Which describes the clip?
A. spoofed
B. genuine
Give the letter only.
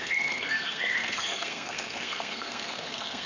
A